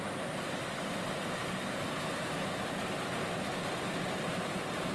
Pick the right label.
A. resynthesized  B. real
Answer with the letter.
B